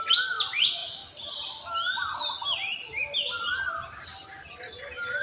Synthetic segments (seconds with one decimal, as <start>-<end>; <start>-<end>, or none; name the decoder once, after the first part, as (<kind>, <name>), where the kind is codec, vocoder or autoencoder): none